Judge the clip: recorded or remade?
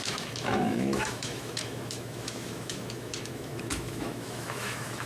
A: remade